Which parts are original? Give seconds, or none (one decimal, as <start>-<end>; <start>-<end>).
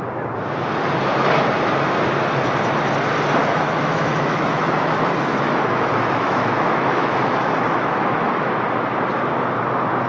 0.0-3.4; 8.5-10.1